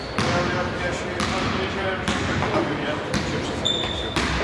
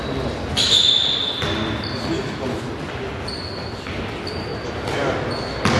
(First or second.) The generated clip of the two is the first